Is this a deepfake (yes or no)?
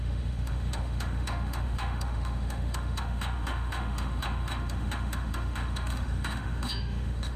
yes